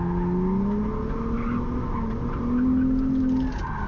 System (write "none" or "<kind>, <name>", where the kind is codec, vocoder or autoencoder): none